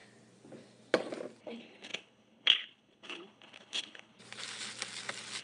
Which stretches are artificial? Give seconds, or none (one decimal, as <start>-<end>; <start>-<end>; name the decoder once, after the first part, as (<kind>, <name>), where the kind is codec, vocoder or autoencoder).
1.4-4.2 (codec, HILCodec)